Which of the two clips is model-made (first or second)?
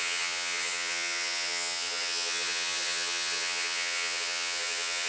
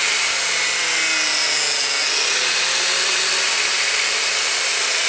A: first